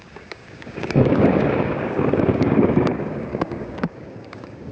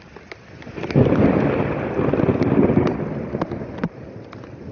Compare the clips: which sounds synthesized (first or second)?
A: first